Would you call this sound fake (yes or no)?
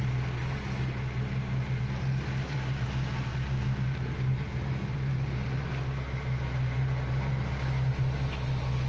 no